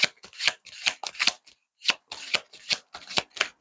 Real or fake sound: real